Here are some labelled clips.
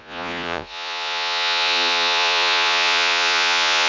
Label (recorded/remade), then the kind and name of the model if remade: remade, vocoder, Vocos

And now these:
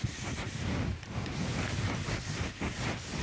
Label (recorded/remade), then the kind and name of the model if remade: recorded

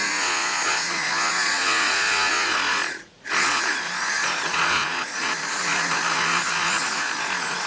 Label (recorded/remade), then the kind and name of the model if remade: remade, vocoder, Vocos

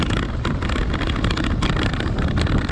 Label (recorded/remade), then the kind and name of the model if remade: recorded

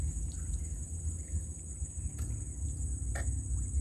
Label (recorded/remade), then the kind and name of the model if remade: recorded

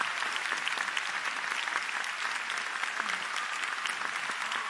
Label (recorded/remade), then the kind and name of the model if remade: recorded